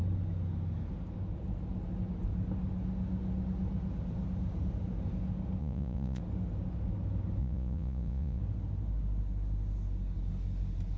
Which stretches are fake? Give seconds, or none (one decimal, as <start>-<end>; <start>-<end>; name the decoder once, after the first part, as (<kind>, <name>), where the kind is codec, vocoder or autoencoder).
5.6-6.2 (vocoder, Vocos); 7.4-8.4